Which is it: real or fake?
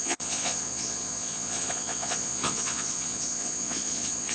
fake